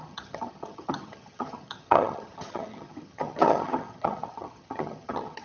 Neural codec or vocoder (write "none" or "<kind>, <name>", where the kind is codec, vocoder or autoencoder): vocoder, HiFi-GAN